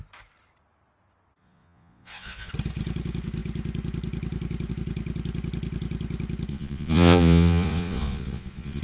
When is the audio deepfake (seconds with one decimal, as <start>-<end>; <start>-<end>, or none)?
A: 1.4-2.5; 6.5-8.8